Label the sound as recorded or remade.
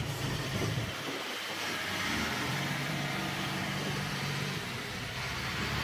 remade